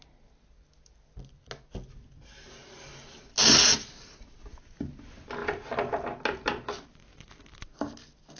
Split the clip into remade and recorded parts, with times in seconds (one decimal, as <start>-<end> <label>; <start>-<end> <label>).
0.0-8.4 recorded